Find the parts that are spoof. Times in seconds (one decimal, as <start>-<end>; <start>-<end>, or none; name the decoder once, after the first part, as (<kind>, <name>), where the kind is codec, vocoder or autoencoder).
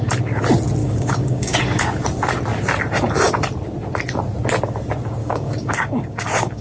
0.8-1.6 (codec, DAC); 5.2-6.6